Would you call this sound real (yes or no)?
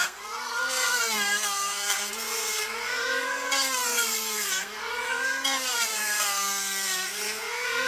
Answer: no